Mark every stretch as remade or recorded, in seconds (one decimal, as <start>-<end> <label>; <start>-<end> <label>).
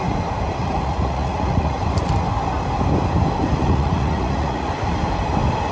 0.0-0.6 recorded; 0.6-1.8 remade; 1.8-3.6 recorded; 3.6-4.7 remade; 4.7-5.7 recorded